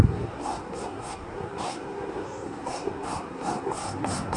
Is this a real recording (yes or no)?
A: no